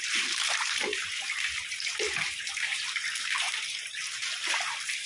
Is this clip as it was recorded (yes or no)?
no